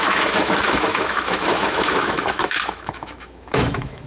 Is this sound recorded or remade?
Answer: remade